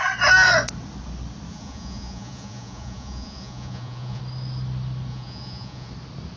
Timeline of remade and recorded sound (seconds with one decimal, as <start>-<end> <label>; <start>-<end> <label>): 0.0-1.5 recorded; 1.5-4.2 remade; 4.2-5.1 recorded; 5.1-5.9 remade; 5.9-6.4 recorded